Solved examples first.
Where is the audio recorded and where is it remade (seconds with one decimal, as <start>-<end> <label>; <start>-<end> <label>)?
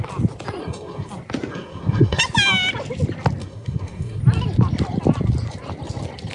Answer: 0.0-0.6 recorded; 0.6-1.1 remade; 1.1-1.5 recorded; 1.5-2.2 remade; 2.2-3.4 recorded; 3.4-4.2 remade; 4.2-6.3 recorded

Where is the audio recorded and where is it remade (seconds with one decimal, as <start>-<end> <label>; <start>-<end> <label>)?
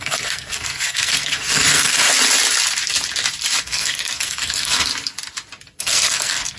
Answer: 0.0-2.1 remade; 2.1-3.6 recorded; 3.6-4.9 remade; 4.9-5.8 recorded; 5.8-6.6 remade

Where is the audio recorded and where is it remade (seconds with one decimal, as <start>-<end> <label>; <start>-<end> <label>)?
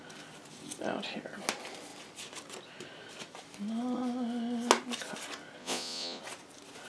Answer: 0.0-5.6 recorded; 5.6-6.2 remade; 6.2-6.9 recorded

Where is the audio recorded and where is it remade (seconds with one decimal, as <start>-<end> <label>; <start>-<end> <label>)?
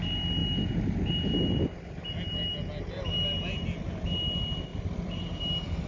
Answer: 0.0-4.7 recorded; 4.7-5.4 remade; 5.4-5.9 recorded